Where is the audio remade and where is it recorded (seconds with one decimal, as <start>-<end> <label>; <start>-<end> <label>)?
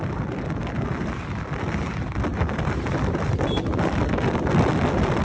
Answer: 0.0-2.3 recorded; 2.3-4.7 remade; 4.7-5.2 recorded